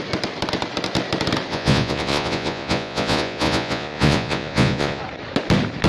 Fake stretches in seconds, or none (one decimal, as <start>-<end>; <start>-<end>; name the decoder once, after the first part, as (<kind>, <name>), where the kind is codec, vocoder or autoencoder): 1.5-5.0 (vocoder, Vocos)

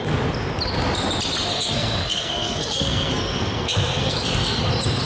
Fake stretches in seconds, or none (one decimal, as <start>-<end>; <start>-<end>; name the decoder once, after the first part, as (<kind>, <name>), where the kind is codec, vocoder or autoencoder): 1.5-4.6 (codec, SNAC)

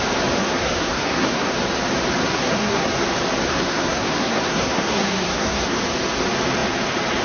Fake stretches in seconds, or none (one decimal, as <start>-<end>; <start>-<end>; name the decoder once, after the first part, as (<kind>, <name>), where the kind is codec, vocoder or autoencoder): 0.4-1.5 (codec, SNAC); 2.2-2.9; 3.5-5.8

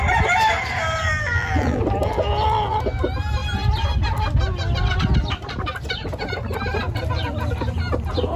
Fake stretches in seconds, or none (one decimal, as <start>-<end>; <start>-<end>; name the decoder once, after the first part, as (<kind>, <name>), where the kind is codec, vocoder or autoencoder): 1.1-1.8 (vocoder, BigVGAN v2)

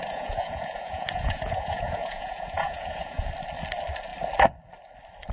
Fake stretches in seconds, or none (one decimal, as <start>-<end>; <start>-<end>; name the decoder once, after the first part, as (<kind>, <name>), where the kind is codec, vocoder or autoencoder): 0.0-3.2 (vocoder, Vocos)

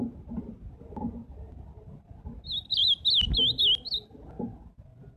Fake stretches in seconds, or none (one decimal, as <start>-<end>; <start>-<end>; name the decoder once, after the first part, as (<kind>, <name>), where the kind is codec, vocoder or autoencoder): none

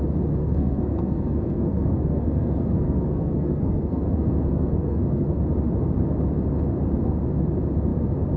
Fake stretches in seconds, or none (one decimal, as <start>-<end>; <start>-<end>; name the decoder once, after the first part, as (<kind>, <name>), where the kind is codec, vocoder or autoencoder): 0.4-5.4 (codec, SNAC)

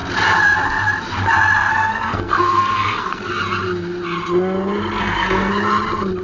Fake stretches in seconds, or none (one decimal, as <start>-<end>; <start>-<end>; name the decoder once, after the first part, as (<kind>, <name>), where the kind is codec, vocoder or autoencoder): 1.7-3.4 (codec, SNAC); 5.0-5.5